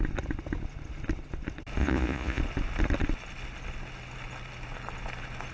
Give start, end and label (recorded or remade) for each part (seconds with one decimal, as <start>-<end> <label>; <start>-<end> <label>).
0.0-1.8 recorded; 1.8-2.4 remade; 2.4-5.5 recorded

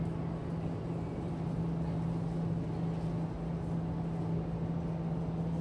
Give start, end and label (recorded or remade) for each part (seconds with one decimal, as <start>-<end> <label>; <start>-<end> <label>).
0.0-5.6 recorded

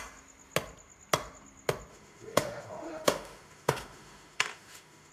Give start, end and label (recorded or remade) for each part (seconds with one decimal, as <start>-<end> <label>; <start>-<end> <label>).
0.0-1.9 recorded; 1.9-5.1 remade